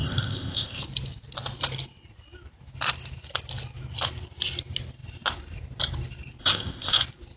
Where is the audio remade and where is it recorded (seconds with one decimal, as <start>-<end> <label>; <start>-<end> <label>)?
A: 0.0-0.8 remade; 0.8-6.4 recorded; 6.4-7.0 remade; 7.0-7.4 recorded